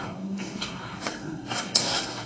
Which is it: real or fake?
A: fake